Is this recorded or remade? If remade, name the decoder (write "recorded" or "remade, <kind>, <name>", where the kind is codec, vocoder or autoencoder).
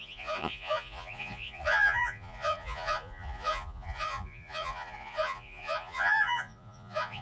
remade, vocoder, Vocos